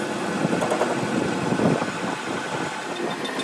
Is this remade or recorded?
recorded